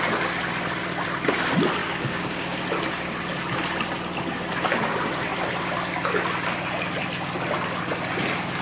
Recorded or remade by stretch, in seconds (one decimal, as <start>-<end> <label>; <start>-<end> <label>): 0.0-1.8 recorded; 1.8-2.5 remade; 2.5-8.6 recorded